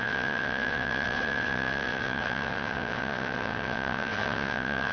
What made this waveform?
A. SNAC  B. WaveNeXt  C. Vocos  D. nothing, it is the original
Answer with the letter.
B